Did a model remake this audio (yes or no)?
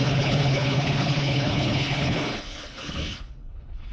yes